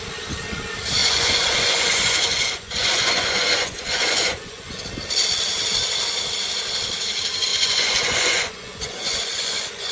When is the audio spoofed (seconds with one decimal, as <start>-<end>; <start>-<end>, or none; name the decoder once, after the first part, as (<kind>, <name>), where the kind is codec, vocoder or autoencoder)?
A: 1.0-4.8 (vocoder, Vocos); 7.5-9.9